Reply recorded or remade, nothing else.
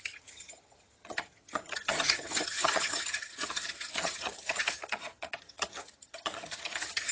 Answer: remade